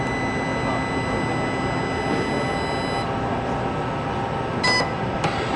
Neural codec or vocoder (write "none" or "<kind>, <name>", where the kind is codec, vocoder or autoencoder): none